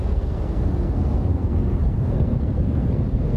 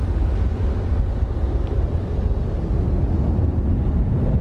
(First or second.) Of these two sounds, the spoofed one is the first